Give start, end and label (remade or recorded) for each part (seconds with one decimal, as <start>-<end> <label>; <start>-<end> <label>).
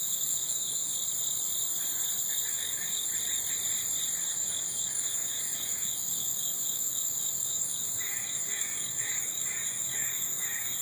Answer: 0.0-0.9 remade; 0.9-2.5 recorded; 2.5-3.1 remade; 3.1-4.3 recorded; 4.3-10.8 remade